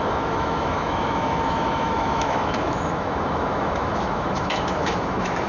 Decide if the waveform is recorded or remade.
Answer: remade